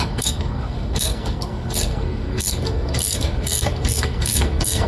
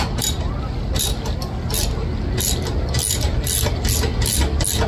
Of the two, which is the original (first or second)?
second